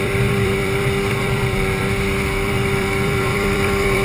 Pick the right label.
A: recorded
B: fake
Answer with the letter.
B